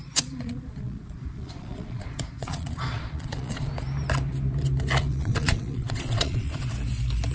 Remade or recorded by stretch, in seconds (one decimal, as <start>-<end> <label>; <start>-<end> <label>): 0.0-3.7 remade; 3.7-5.0 recorded; 5.0-6.6 remade; 6.6-7.3 recorded